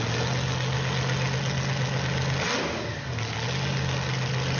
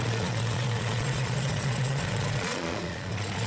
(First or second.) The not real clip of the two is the second